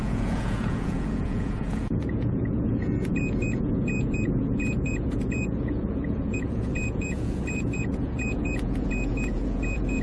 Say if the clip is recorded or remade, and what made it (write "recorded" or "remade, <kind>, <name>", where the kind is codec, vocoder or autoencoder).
remade, vocoder, Vocos